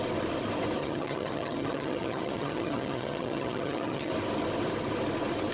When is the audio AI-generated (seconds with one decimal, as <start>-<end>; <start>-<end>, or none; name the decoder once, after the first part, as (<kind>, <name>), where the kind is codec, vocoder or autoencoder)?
0.8-4.1 (vocoder, HiFi-GAN)